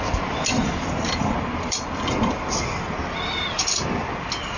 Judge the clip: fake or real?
fake